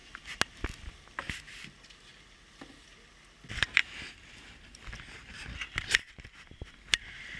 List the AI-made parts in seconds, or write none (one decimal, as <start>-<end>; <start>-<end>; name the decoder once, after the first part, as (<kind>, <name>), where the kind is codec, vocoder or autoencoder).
none